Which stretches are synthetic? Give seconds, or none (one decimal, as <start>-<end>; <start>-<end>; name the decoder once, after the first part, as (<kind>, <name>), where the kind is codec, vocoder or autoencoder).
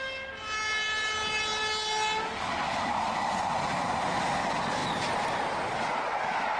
none